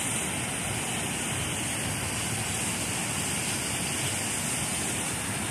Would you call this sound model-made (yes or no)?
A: no